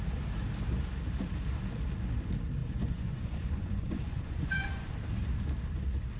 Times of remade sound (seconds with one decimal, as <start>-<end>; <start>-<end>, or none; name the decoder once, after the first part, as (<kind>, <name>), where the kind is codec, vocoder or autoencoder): 2.6-4.9 (vocoder, Vocos)